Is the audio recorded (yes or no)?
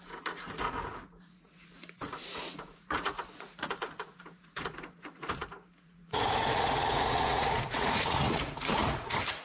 no